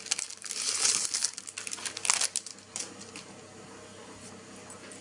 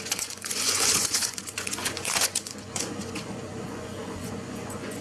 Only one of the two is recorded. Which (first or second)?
first